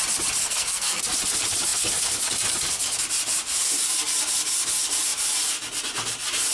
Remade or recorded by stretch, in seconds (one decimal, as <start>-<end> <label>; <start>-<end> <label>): 0.0-0.4 recorded; 0.4-1.0 remade; 1.0-6.5 recorded